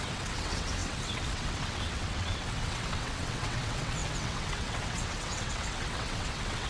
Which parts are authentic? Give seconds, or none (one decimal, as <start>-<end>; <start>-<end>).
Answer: none

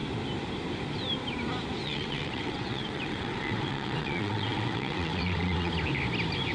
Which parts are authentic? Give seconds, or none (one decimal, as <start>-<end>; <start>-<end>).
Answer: 0.0-1.8; 5.7-6.5